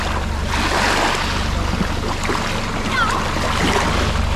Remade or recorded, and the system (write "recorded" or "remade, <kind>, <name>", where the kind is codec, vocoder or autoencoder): recorded